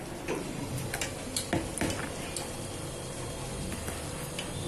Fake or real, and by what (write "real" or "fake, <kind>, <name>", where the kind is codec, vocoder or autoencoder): real